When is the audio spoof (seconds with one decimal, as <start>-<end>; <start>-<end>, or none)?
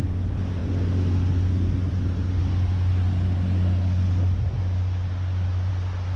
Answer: none